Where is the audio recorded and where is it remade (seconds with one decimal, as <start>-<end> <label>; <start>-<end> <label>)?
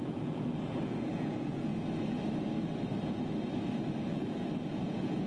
0.0-1.7 remade; 1.7-4.0 recorded; 4.0-5.3 remade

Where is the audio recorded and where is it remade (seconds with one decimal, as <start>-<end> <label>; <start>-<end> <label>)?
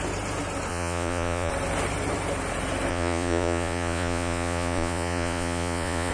0.0-0.7 recorded; 0.7-1.5 remade; 1.5-2.9 recorded; 2.9-6.1 remade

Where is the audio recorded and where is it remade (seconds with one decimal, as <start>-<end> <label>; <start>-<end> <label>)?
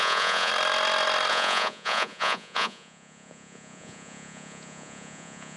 0.0-0.5 remade; 0.5-1.3 recorded; 1.3-5.6 remade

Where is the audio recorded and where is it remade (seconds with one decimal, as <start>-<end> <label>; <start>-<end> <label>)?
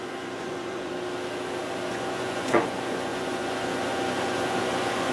0.0-0.9 remade; 0.9-1.9 recorded; 1.9-5.1 remade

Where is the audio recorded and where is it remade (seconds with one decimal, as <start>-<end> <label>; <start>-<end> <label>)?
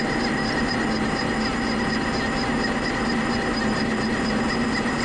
0.0-5.0 recorded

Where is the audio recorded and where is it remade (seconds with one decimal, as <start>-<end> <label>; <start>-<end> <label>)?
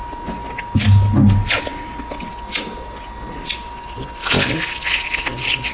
0.0-5.7 recorded